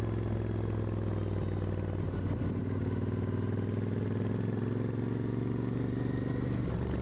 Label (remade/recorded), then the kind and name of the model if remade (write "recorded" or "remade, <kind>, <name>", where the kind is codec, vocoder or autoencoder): recorded